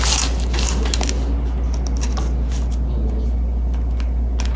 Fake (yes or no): no